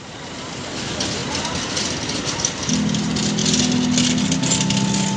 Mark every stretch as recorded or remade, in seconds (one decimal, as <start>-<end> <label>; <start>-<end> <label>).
0.0-5.2 recorded